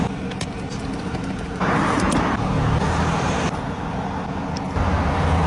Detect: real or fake real